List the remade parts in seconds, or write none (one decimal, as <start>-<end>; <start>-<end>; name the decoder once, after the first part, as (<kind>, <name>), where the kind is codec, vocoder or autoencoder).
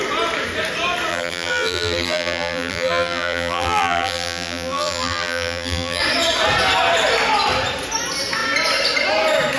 1.1-6.0 (vocoder, BigVGAN v2)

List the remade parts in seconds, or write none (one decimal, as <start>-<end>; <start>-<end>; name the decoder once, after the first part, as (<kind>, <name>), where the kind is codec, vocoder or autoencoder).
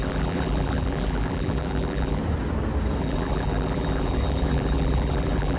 0.0-2.2 (vocoder, BigVGAN v2); 3.0-5.6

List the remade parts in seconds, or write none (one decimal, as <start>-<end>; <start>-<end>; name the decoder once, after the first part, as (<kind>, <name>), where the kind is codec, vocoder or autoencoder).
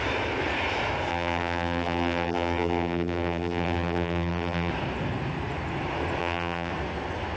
1.1-4.7 (vocoder, BigVGAN v2); 6.2-6.7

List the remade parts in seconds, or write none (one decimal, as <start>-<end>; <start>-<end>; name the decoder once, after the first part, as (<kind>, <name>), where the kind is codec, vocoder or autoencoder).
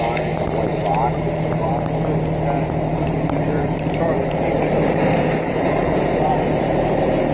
0.7-1.7 (vocoder, BigVGAN v2); 2.9-7.3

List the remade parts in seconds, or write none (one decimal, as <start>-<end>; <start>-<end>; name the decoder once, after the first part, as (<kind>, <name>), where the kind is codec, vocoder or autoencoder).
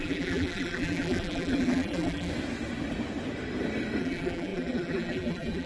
0.0-2.3 (vocoder, BigVGAN v2); 4.0-5.7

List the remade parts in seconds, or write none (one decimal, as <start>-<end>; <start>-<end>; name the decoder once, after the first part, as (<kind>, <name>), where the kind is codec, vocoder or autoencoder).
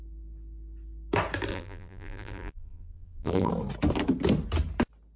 1.5-3.5 (vocoder, BigVGAN v2)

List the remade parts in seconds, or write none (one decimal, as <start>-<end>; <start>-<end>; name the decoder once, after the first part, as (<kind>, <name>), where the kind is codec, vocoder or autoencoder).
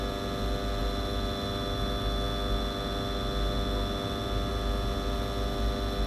none